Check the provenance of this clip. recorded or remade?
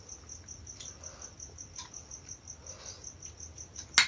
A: recorded